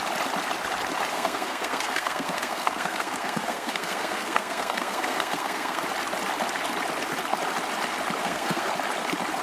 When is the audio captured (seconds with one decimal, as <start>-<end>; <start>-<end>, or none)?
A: 0.0-1.1; 5.8-8.2; 8.7-9.4